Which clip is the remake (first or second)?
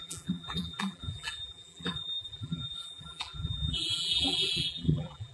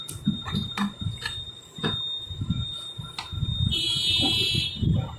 first